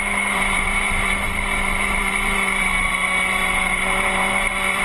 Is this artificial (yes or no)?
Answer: yes